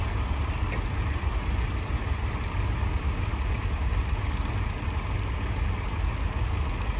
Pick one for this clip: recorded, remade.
recorded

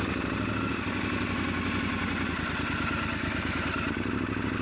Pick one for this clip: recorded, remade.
recorded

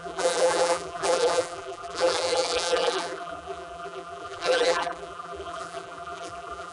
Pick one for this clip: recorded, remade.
remade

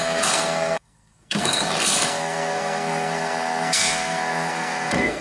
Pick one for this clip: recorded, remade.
remade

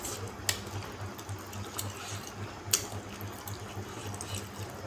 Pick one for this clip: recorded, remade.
recorded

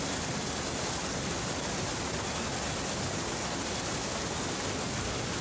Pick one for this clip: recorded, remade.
recorded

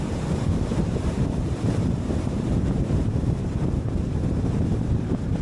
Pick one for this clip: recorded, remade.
remade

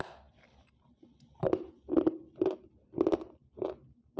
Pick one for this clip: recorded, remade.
recorded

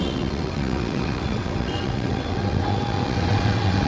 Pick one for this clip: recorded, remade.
remade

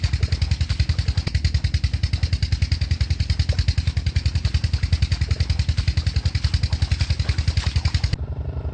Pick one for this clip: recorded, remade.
recorded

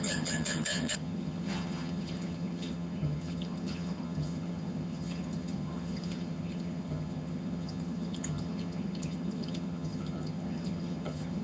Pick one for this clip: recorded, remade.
remade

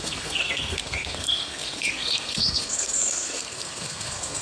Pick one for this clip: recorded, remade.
remade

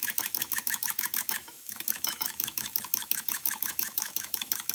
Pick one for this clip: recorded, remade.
remade